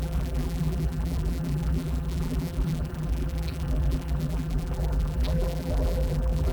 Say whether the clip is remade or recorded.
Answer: remade